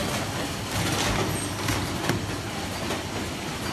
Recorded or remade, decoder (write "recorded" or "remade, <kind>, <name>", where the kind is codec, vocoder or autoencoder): recorded